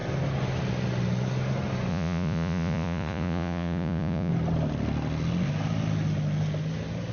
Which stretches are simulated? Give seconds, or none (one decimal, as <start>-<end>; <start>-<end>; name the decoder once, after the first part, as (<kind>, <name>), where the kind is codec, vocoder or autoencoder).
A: 1.9-4.3 (vocoder, Vocos)